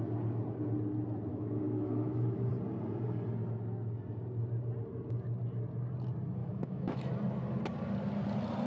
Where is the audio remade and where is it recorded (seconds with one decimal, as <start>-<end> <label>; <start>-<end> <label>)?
0.0-1.3 recorded; 1.3-2.5 remade; 2.5-6.4 recorded; 6.4-7.1 remade; 7.1-8.7 recorded